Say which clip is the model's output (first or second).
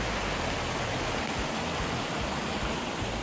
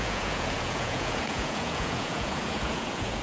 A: second